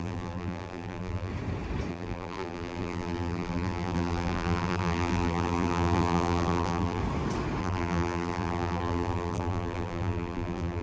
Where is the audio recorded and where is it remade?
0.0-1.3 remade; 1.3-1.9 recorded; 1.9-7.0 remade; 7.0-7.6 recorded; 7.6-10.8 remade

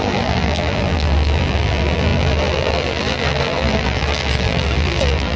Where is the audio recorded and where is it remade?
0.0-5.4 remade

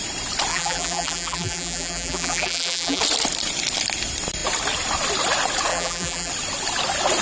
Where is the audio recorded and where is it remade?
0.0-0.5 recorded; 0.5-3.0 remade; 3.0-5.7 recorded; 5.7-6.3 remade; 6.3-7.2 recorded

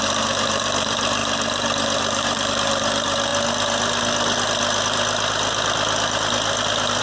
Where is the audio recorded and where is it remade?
0.0-3.3 remade; 3.3-7.0 recorded

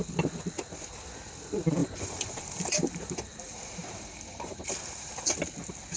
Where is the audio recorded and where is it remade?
0.0-1.8 recorded; 1.8-5.4 remade; 5.4-6.0 recorded

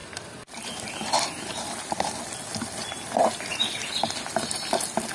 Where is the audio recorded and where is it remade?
0.0-5.1 recorded

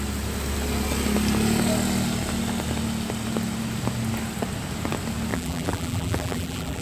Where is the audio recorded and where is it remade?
0.0-5.3 recorded; 5.3-6.8 remade

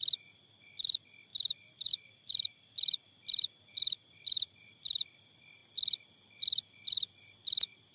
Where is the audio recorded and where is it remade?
0.0-7.9 recorded